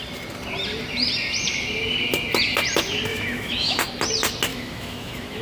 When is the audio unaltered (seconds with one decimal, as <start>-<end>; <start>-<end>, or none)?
0.0-3.1; 3.8-4.5